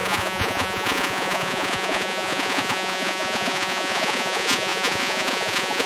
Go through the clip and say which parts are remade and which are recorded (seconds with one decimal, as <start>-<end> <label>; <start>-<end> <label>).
0.0-5.9 remade